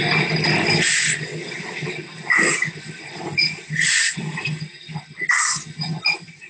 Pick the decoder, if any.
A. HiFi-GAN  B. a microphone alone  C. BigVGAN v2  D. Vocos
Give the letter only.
B